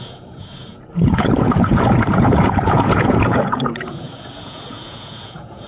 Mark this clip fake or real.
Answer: fake